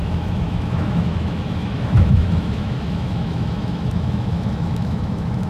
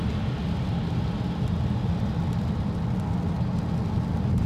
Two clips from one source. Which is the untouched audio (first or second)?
second